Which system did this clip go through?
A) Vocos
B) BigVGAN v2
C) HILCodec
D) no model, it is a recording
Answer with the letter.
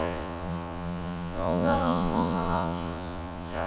A